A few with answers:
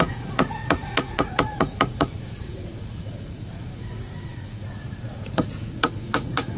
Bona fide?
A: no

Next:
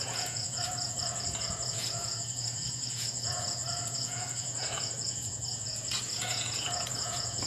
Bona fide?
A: no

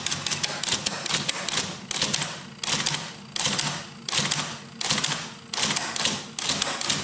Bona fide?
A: yes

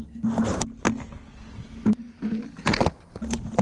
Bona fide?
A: yes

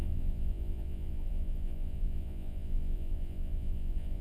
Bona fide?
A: no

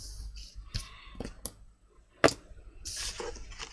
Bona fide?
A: yes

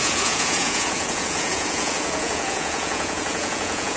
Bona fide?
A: no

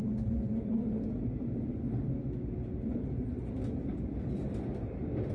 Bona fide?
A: yes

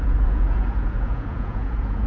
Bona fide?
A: no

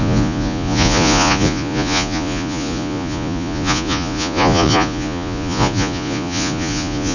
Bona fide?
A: no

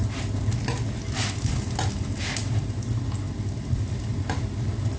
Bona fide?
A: yes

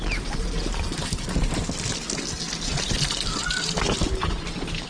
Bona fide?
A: yes